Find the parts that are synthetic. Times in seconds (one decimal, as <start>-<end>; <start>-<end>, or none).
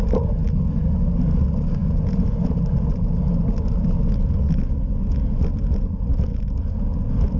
1.8-2.6